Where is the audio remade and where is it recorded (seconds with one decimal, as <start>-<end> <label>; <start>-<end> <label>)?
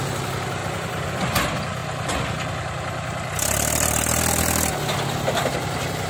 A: 0.0-0.6 recorded; 0.6-1.1 remade; 1.1-6.1 recorded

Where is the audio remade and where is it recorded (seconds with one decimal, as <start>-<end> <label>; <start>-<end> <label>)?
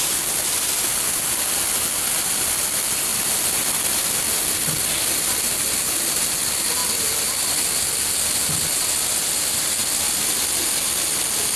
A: 0.0-3.1 recorded; 3.1-4.5 remade; 4.5-11.6 recorded